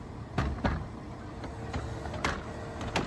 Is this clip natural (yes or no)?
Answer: yes